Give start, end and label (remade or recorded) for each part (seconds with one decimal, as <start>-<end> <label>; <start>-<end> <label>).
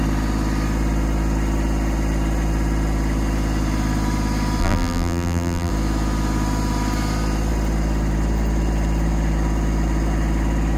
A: 0.0-4.6 recorded; 4.6-5.7 remade; 5.7-10.8 recorded